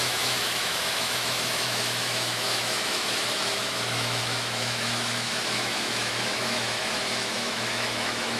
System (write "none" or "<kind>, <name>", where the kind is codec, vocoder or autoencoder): autoencoder, DAC-VAE